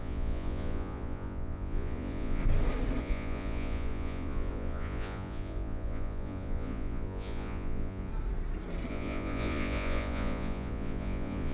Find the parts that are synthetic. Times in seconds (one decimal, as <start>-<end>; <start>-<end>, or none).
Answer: 0.0-2.4; 3.0-8.1; 8.9-11.5

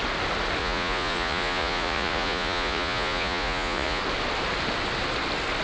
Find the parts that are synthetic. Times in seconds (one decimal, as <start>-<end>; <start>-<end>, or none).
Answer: 0.6-4.0

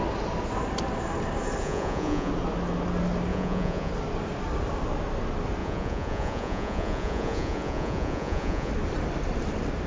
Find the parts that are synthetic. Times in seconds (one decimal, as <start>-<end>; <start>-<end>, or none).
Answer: 1.6-2.3; 3.3-3.9; 5.6-8.7

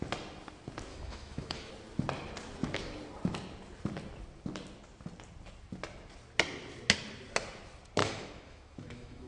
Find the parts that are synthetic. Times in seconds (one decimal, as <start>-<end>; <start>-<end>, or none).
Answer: 0.9-1.7; 8.0-9.3